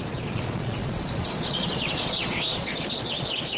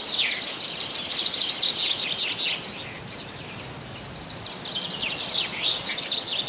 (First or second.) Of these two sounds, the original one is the second